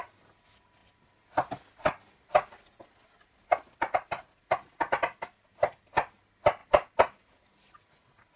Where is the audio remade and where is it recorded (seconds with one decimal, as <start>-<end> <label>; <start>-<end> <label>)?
0.0-8.4 recorded